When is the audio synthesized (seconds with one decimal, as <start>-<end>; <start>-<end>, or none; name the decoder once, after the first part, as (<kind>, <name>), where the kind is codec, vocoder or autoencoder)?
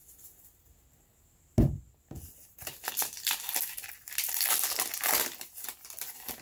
none